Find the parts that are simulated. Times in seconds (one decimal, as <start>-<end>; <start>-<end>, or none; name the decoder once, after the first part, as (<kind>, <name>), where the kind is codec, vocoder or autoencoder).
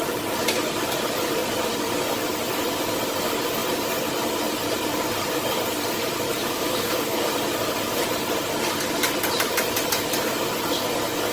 6.4-7.3 (codec, DAC)